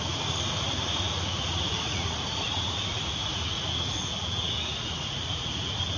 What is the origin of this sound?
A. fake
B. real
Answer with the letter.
A